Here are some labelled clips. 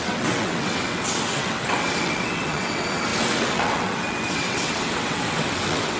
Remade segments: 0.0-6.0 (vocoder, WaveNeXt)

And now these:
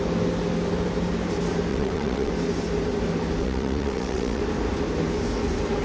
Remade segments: 1.7-2.3 (vocoder, WaveNeXt); 3.4-4.4

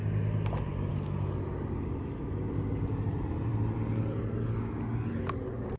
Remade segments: none

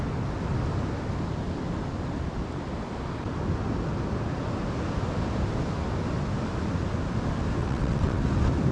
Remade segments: 7.6-8.2 (vocoder, WaveNeXt)

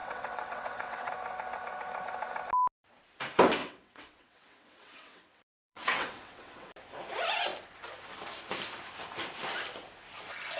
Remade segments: 0.0-1.1 (vocoder, WaveNeXt); 3.6-6.7

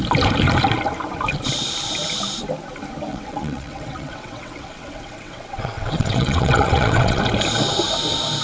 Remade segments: 3.1-7.2 (vocoder, WaveNeXt)

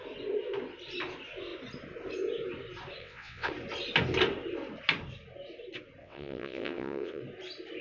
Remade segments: 3.0-3.5 (vocoder, WaveNeXt); 6.0-7.2